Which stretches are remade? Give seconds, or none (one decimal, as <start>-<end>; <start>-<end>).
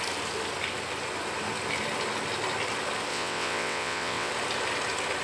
3.1-4.3